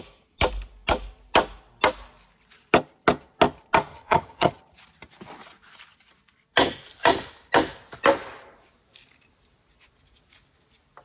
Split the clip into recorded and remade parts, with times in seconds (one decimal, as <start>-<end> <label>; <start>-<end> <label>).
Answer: 0.0-3.9 recorded; 3.9-4.5 remade; 4.5-11.0 recorded